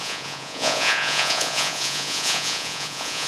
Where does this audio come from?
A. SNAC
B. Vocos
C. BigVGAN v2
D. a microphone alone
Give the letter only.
B